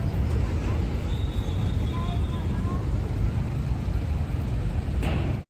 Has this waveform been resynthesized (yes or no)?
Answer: no